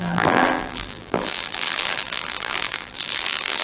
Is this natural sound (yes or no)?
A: no